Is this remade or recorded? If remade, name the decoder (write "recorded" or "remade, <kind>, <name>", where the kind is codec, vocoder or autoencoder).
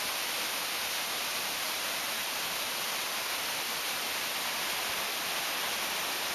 recorded